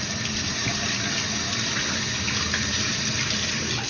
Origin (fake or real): real